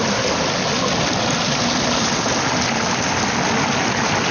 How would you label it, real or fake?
real